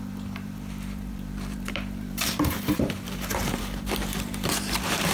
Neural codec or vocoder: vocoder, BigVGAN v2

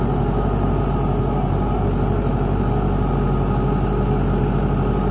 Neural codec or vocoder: none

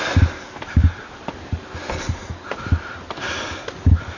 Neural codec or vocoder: none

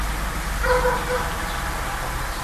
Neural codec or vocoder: none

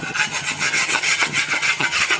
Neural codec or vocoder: vocoder, HiFi-GAN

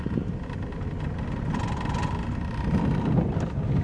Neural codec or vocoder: none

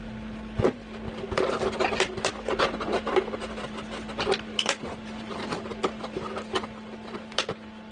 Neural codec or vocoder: none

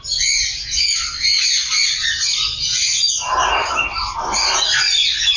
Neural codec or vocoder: none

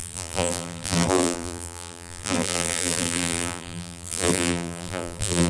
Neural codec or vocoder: vocoder, BigVGAN v2